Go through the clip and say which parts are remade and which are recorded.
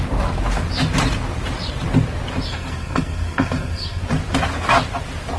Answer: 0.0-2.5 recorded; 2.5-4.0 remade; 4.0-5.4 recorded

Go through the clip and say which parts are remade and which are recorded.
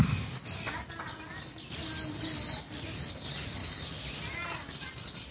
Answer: 0.0-5.3 recorded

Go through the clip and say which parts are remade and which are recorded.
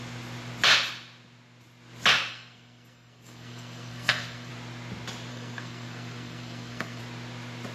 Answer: 0.0-2.3 recorded; 2.3-4.5 remade; 4.5-5.3 recorded; 5.3-7.0 remade; 7.0-7.7 recorded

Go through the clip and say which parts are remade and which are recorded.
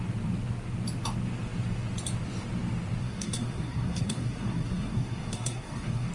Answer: 0.0-3.0 recorded; 3.0-6.1 remade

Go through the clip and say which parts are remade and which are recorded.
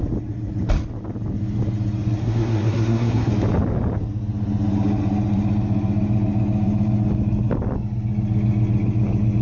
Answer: 0.0-2.2 recorded; 2.2-3.3 remade; 3.3-9.4 recorded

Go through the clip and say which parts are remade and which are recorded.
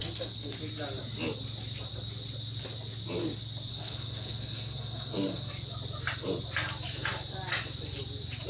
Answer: 0.0-0.6 remade; 0.6-3.7 recorded; 3.7-5.5 remade; 5.5-8.5 recorded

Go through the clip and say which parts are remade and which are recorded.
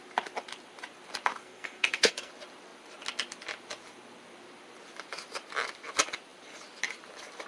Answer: 0.0-1.4 recorded; 1.4-2.3 remade; 2.3-7.5 recorded